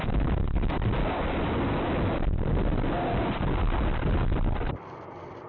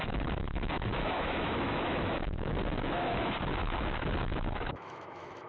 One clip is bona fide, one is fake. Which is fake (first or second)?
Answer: second